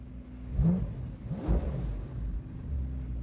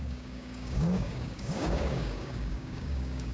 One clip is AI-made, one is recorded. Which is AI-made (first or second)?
second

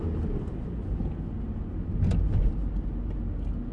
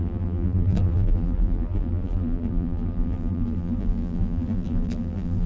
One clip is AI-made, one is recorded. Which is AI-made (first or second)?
second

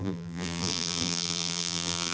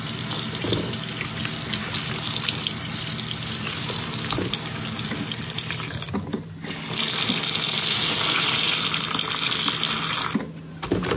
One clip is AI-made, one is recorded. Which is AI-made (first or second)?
first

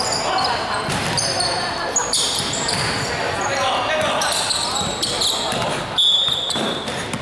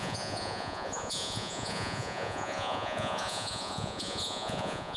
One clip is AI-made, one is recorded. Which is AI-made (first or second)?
second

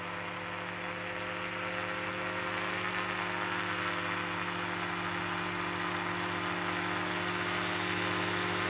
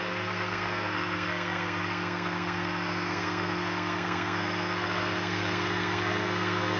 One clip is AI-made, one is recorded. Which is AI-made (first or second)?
second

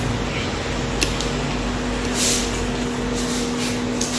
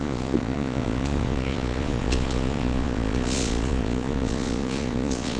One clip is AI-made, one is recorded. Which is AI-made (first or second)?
second